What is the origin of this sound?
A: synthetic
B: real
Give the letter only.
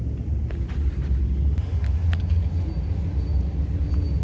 B